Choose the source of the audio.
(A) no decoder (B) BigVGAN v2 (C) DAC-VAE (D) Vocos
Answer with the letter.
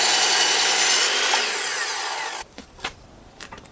B